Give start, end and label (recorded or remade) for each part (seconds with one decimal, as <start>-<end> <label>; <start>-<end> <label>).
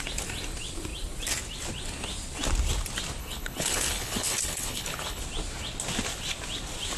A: 0.0-3.2 recorded; 3.2-5.2 remade; 5.2-7.0 recorded